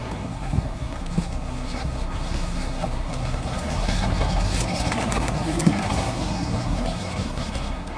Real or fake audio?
fake